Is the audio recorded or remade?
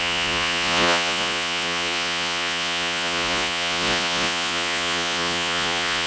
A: remade